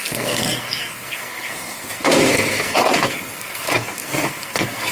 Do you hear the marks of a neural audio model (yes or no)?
yes